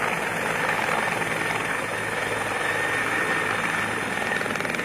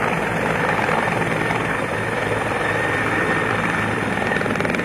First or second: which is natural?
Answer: first